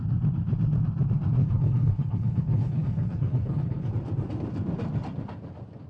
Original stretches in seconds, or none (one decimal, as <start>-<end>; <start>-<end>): 0.0-1.4; 3.9-5.9